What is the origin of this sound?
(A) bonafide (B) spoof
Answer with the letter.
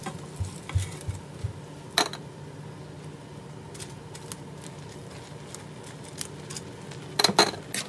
A